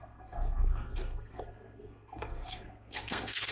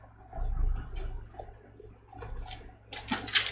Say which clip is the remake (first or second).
first